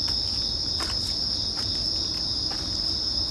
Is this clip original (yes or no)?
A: yes